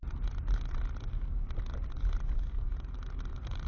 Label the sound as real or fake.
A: real